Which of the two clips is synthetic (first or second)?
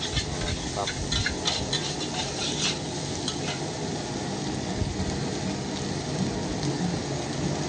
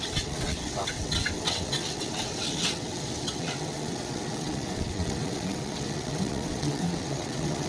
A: second